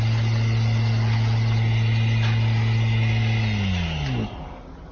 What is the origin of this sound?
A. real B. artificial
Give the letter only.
A